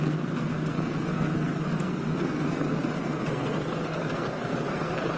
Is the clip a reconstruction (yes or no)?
yes